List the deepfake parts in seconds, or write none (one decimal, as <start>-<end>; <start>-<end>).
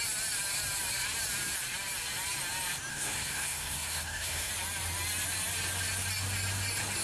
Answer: 2.9-4.5